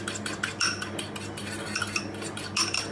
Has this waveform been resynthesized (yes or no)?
no